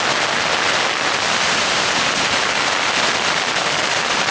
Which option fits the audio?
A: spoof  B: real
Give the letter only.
B